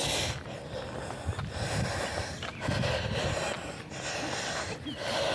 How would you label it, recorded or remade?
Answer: recorded